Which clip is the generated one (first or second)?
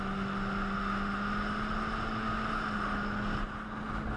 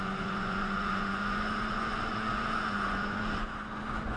second